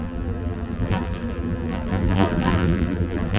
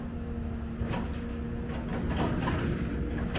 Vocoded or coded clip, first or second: first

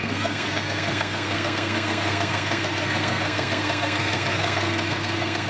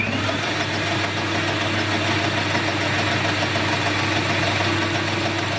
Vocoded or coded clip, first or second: first